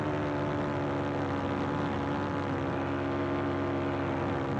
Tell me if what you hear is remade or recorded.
recorded